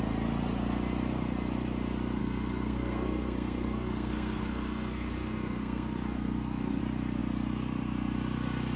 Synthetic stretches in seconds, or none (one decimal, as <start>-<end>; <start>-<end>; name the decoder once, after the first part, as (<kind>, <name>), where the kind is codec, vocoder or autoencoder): 2.2-6.8 (codec, SNAC)